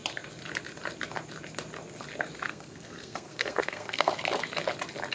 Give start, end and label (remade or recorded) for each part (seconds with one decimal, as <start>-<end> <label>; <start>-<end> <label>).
0.0-2.5 recorded; 2.5-4.1 remade; 4.1-5.1 recorded